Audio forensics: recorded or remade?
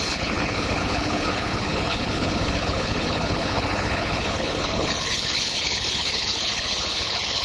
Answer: remade